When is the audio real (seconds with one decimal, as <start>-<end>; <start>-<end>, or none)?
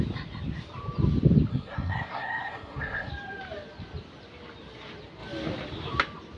0.0-1.5; 3.1-6.4